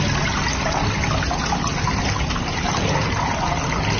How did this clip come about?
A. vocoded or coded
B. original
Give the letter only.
B